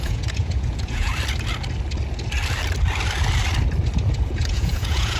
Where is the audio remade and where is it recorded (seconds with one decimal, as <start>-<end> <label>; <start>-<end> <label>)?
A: 0.0-1.1 remade; 1.1-4.2 recorded; 4.2-5.2 remade

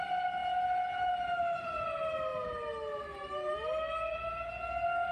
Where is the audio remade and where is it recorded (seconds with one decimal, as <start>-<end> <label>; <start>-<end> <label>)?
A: 0.0-5.1 recorded

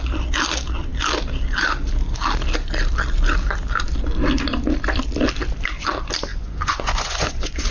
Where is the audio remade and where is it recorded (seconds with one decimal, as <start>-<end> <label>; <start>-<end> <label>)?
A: 0.0-6.3 recorded; 6.3-7.7 remade